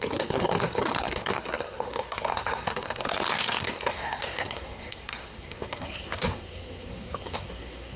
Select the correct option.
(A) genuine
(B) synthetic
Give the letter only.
B